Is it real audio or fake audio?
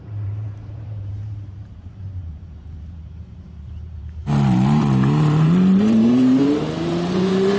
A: fake